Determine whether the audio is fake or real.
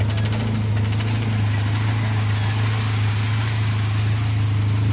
real